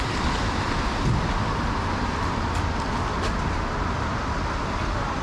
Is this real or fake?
real